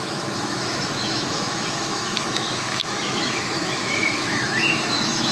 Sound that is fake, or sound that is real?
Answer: fake